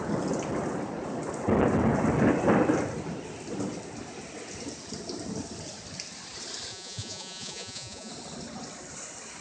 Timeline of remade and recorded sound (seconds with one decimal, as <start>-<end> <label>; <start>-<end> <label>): 0.0-6.7 recorded; 6.7-8.1 remade; 8.1-9.4 recorded